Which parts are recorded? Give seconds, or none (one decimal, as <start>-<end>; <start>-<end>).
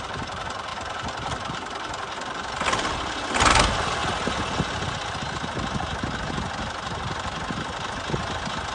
0.0-0.7; 3.3-8.7